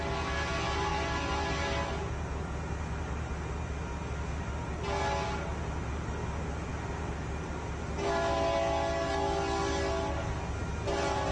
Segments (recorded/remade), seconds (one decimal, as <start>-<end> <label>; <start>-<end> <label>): 0.0-11.3 recorded